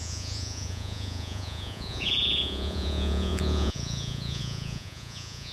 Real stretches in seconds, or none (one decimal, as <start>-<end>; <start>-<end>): none

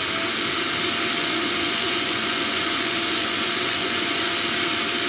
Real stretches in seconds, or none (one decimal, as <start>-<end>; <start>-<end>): 0.0-1.2; 4.3-5.1

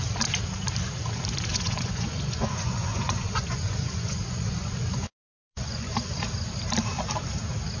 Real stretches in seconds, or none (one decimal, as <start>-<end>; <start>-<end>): 0.0-1.5; 6.2-7.8

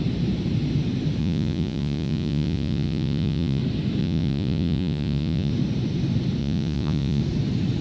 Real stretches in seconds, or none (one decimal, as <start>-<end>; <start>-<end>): 0.0-1.2; 3.6-4.0; 5.5-6.4; 7.2-7.8